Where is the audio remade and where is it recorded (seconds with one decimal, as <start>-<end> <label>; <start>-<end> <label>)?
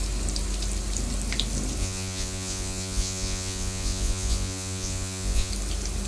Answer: 0.0-1.8 recorded; 1.8-5.5 remade; 5.5-6.1 recorded